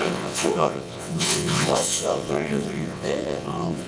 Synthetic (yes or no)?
yes